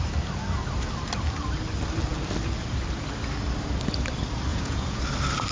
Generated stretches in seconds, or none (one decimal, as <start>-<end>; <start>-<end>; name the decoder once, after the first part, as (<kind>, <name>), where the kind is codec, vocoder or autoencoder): 4.5-5.0 (vocoder, Vocos)